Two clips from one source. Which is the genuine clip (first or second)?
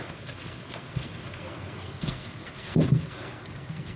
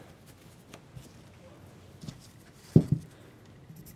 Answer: second